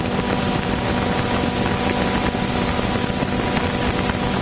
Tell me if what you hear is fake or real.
real